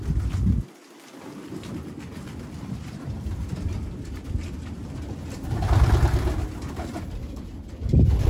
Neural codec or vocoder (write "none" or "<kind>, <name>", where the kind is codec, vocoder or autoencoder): none